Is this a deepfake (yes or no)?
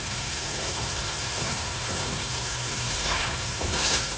yes